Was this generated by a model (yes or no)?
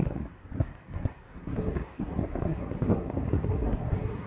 yes